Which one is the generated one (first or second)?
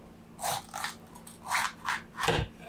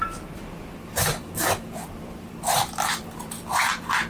second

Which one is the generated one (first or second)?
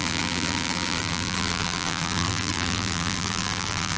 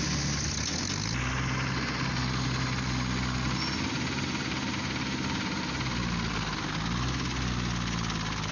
first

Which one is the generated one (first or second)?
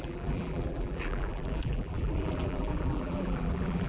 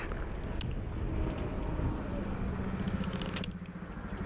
first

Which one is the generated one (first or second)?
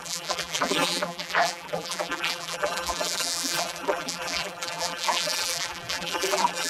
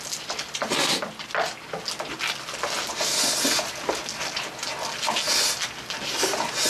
first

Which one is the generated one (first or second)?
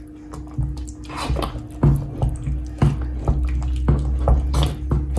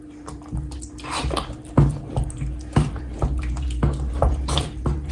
second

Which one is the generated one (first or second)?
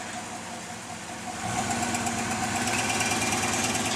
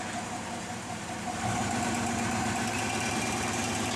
second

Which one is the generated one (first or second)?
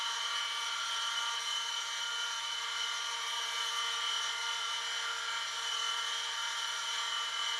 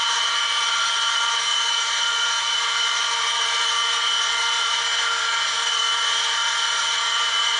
second